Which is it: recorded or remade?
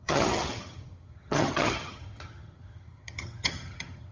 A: remade